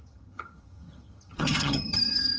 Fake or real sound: fake